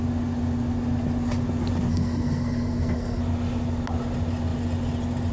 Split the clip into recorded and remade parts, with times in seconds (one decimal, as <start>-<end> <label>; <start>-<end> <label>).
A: 0.0-1.9 recorded; 1.9-3.2 remade; 3.2-5.3 recorded